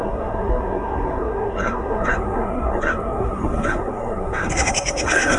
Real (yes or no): no